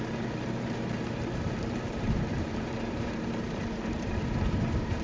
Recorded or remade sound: remade